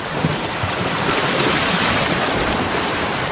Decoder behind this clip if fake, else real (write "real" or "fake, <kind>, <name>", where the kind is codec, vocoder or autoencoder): real